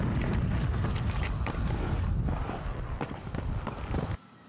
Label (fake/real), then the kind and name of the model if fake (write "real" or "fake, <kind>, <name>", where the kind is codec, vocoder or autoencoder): real